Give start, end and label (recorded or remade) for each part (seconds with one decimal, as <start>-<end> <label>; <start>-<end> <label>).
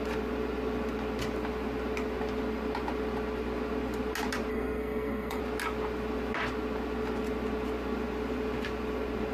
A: 0.0-4.5 recorded; 4.5-5.4 remade; 5.4-9.3 recorded